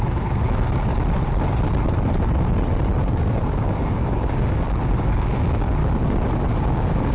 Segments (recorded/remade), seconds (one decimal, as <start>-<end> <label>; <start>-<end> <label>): 0.0-0.9 remade; 0.9-3.0 recorded; 3.0-5.8 remade; 5.8-6.6 recorded; 6.6-7.1 remade